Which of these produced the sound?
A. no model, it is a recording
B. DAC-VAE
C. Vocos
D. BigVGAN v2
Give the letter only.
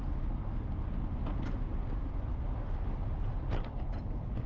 A